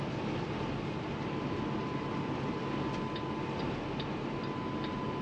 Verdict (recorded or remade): recorded